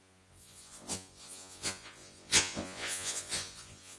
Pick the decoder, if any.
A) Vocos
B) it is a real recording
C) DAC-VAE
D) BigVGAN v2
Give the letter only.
A